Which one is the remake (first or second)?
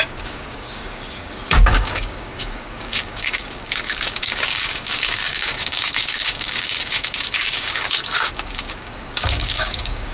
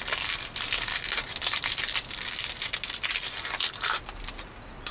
first